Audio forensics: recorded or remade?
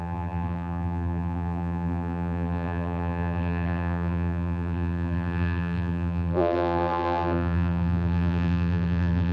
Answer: remade